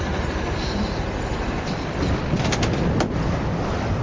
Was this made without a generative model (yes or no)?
yes